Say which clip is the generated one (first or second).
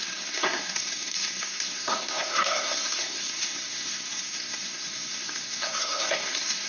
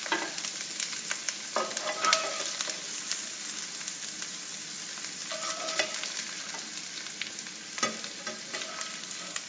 first